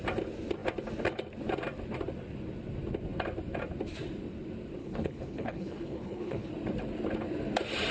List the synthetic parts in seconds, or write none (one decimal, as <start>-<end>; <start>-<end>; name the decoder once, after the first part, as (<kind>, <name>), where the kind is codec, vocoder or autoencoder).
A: 4.8-6.5 (codec, HILCodec)